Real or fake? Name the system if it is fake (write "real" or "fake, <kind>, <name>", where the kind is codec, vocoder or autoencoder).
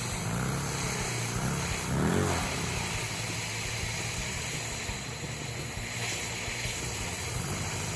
real